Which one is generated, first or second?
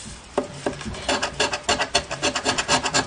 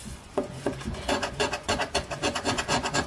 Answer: second